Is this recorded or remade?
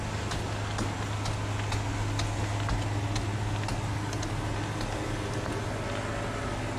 recorded